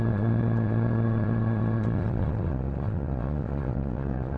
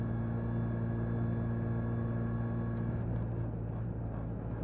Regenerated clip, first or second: first